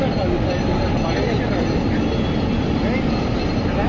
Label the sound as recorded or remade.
recorded